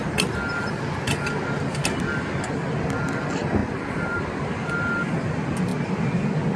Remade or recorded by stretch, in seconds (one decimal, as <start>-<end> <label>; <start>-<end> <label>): 0.0-3.6 recorded; 3.6-4.2 remade; 4.2-6.6 recorded